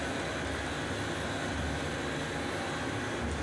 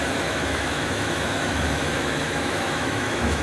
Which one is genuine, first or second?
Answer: first